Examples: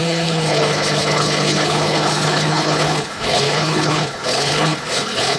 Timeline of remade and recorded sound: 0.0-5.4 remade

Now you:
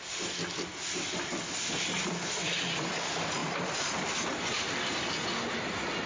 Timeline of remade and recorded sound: 0.0-0.7 recorded; 0.7-2.1 remade; 2.1-3.4 recorded; 3.4-4.2 remade; 4.2-6.1 recorded

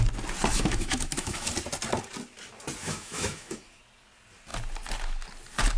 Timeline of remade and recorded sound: 0.0-0.5 recorded; 0.5-1.5 remade; 1.5-2.8 recorded; 2.8-3.8 remade; 3.8-5.8 recorded

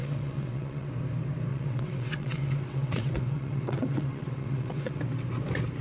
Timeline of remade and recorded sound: 0.0-0.9 remade; 0.9-1.5 recorded; 1.5-5.0 remade; 5.0-5.8 recorded